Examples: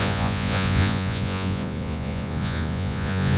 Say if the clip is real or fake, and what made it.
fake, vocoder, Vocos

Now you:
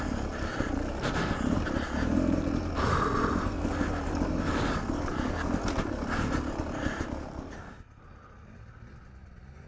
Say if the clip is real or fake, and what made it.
real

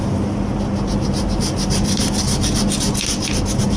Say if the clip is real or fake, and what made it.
real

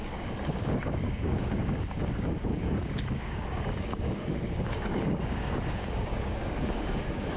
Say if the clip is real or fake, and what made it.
fake, codec, DAC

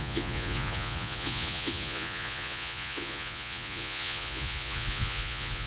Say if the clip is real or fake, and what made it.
fake, vocoder, Vocos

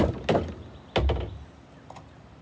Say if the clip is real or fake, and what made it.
real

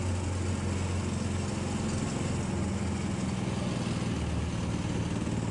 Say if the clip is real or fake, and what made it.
real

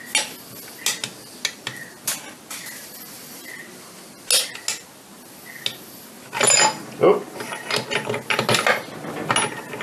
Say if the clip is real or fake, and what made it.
real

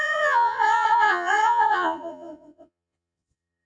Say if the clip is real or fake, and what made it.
fake, vocoder, Vocos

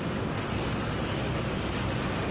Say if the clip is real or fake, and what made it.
real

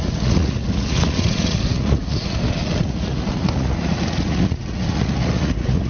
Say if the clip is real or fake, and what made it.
fake, vocoder, Vocos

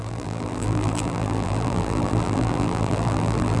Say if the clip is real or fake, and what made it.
fake, vocoder, BigVGAN v2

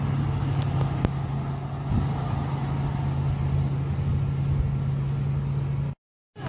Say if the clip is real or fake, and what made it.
real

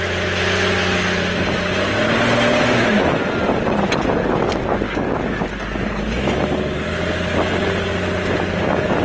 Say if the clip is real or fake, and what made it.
real